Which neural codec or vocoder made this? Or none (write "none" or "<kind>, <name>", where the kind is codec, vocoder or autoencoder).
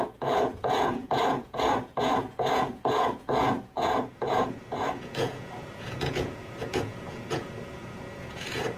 vocoder, Vocos